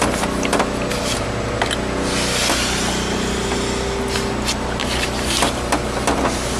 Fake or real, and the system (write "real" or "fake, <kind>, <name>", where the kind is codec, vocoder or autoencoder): real